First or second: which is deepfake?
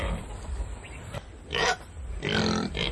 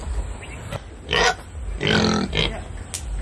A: first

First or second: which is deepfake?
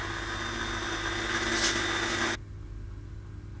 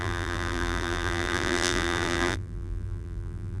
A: second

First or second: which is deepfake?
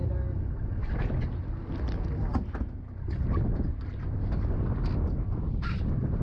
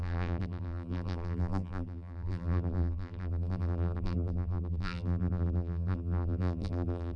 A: second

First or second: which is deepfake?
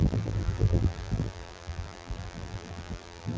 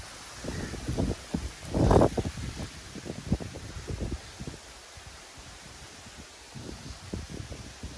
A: first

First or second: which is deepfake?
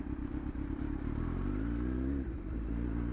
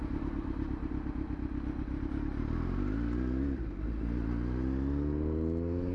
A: first